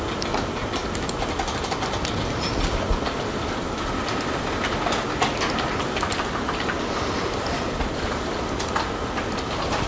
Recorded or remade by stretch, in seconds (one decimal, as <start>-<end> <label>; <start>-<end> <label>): 0.0-9.9 recorded